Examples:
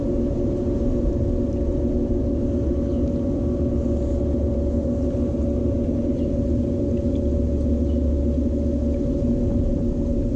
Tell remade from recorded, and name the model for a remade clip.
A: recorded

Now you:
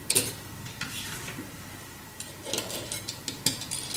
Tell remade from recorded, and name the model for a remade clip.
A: recorded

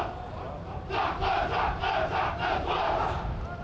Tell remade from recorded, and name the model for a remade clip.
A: recorded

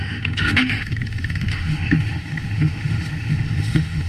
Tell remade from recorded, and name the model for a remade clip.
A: remade, autoencoder, DAC-VAE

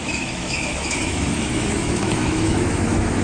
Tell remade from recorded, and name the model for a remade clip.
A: remade, autoencoder, DAC-VAE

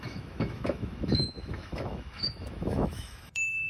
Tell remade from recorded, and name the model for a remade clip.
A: remade, autoencoder, DAC-VAE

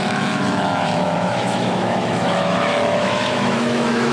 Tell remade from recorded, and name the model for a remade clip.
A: remade, autoencoder, DAC-VAE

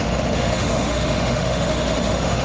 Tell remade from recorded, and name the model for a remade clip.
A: remade, autoencoder, DAC-VAE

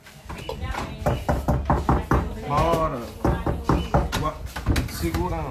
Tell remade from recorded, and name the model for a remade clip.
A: recorded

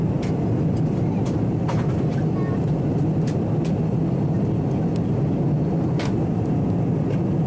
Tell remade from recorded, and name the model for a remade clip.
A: recorded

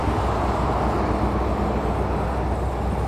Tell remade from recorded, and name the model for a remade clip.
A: recorded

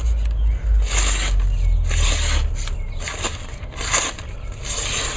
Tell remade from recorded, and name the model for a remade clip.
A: recorded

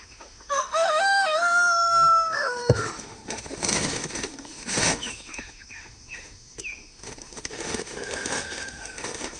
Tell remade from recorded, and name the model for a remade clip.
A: remade, autoencoder, DAC-VAE